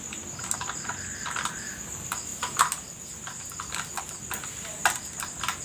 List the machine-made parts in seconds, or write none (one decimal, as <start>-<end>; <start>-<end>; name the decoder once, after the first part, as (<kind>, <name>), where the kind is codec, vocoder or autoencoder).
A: none

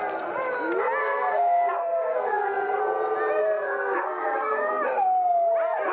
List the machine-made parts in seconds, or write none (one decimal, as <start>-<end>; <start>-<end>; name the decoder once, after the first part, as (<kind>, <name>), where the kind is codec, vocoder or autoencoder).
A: 1.0-2.8 (codec, SNAC); 3.4-4.7

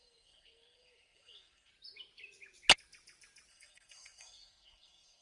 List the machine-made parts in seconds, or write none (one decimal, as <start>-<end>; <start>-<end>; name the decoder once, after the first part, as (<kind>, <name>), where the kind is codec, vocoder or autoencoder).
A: 0.0-1.7 (codec, SNAC); 3.5-5.2

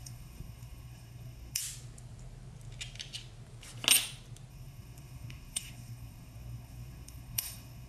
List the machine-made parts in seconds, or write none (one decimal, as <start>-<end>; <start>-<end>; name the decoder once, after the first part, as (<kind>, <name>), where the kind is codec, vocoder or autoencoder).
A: 0.0-1.6 (codec, SNAC); 4.5-7.9

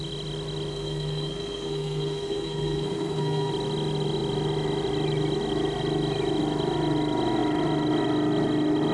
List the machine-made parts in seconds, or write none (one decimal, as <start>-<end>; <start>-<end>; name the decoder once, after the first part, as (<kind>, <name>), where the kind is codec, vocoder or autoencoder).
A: 0.7-3.5 (codec, SNAC)